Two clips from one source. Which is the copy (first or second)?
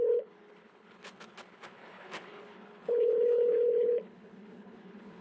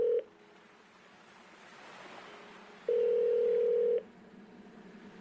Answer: first